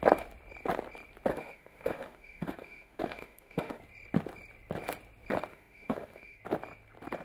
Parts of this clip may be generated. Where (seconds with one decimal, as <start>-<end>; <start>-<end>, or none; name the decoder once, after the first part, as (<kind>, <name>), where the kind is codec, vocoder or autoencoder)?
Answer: 1.3-3.8 (autoencoder, DAC-VAE); 5.5-6.4